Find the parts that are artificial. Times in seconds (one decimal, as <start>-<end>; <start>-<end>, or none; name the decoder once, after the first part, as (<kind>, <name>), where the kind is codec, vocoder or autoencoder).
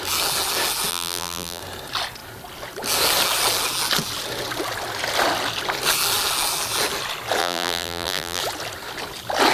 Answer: 0.9-1.6 (vocoder, BigVGAN v2); 7.4-8.4